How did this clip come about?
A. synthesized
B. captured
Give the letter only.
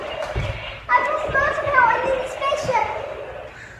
B